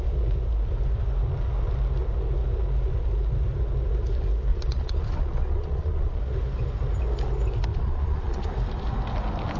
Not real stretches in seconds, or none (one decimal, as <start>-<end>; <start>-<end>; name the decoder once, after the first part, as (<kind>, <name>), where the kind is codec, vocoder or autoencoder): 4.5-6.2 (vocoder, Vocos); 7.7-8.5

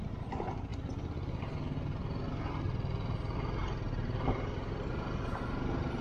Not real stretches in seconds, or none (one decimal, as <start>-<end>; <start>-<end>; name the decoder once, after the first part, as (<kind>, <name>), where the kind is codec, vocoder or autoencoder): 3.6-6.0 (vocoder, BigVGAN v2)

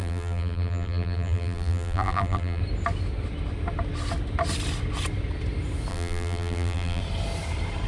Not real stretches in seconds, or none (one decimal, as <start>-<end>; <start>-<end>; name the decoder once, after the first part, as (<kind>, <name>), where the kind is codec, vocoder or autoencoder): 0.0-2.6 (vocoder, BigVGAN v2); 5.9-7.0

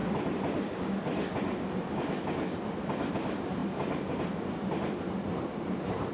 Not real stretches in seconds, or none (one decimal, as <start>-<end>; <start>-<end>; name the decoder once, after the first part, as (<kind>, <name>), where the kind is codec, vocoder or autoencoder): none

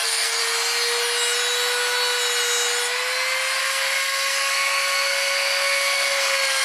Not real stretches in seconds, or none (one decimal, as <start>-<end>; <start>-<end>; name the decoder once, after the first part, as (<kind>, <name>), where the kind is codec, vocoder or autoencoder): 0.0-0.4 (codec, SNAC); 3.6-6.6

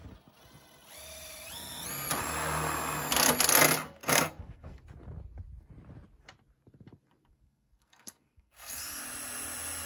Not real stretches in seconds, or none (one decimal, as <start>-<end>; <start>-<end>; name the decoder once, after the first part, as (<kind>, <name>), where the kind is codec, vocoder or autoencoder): 4.0-4.8 (codec, SNAC); 7.3-9.0

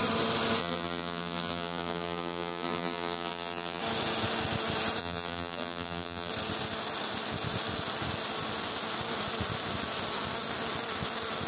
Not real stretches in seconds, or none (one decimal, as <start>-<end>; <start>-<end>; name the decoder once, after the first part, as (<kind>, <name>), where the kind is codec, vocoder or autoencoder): 0.6-3.8 (vocoder, BigVGAN v2); 5.0-6.3

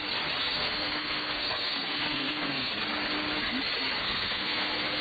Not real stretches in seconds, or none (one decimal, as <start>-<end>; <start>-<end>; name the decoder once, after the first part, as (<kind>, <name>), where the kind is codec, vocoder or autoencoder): 0.4-2.7 (codec, SNAC); 4.0-5.0